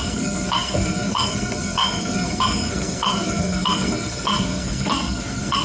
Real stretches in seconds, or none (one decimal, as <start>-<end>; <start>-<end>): none